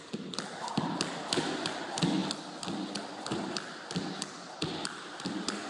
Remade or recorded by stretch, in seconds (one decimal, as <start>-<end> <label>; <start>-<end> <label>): 0.0-5.7 recorded